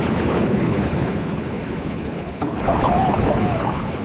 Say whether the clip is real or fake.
fake